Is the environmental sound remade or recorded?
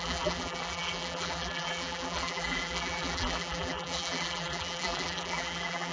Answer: remade